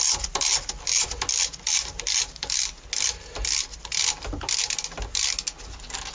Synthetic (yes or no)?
no